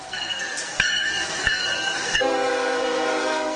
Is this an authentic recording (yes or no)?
no